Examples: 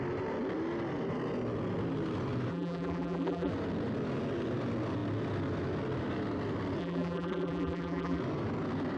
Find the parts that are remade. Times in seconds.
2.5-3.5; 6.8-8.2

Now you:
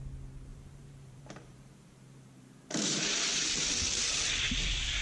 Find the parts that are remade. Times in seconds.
0.5-3.5

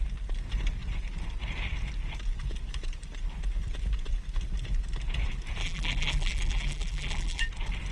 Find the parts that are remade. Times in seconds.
5.6-7.5

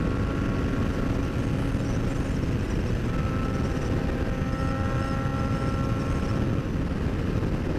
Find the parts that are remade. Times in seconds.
none